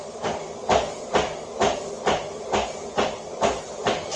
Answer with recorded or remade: recorded